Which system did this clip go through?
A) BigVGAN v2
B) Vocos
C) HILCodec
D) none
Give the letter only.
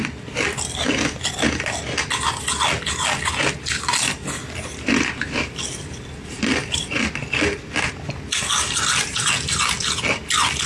D